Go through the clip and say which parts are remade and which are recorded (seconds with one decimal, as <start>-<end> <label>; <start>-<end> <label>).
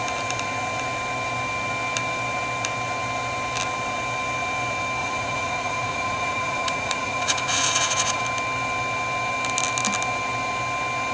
0.0-5.0 recorded; 5.0-8.2 remade; 8.2-11.1 recorded